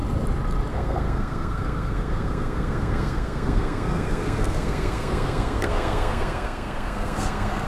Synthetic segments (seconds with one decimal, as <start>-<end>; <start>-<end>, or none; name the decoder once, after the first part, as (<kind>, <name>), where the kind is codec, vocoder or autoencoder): 0.7-7.7 (codec, SNAC)